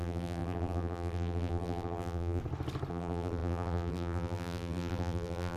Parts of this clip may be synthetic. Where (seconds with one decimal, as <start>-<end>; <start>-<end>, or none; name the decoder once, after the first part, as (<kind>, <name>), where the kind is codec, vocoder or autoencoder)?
0.0-2.4 (vocoder, BigVGAN v2); 2.9-5.6